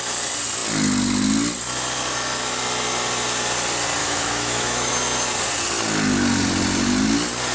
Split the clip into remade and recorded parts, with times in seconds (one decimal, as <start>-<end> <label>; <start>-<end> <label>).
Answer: 0.0-4.0 recorded; 4.0-4.9 remade; 4.9-7.5 recorded